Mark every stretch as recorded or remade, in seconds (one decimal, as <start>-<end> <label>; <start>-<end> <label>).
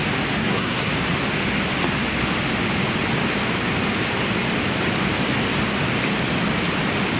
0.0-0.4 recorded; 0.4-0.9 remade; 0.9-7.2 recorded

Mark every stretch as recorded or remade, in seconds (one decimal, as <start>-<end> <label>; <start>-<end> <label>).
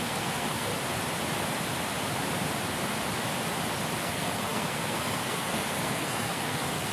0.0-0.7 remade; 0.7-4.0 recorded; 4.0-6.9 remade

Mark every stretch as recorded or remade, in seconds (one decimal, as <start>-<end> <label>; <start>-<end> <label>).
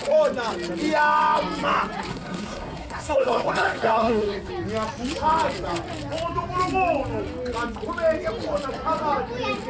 0.0-2.1 recorded; 2.1-4.5 remade; 4.5-9.7 recorded